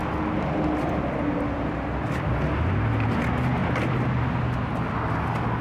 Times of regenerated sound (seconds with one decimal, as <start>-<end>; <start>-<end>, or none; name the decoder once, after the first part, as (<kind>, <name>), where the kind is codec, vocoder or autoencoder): none

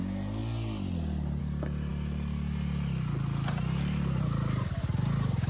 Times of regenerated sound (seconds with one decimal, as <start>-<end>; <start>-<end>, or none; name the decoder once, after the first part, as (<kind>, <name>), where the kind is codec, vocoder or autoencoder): none

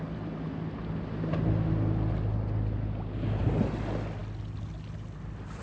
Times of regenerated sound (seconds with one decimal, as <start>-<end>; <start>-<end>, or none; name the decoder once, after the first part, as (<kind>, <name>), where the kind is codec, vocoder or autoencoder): none

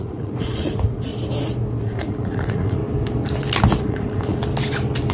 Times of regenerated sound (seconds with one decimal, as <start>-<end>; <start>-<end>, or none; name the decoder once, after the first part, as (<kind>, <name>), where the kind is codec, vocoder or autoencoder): 0.0-1.1 (vocoder, Vocos); 1.8-2.8; 3.8-4.4